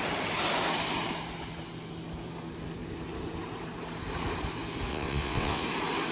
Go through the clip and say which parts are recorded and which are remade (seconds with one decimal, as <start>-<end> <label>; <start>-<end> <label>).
0.0-4.9 recorded; 4.9-5.6 remade; 5.6-6.1 recorded